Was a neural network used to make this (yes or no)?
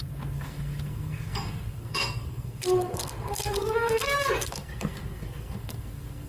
yes